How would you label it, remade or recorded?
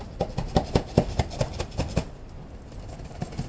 recorded